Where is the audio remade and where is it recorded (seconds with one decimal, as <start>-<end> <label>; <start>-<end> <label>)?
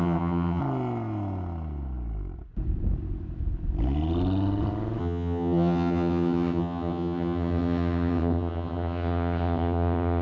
0.0-0.6 remade; 0.6-5.0 recorded; 5.0-10.2 remade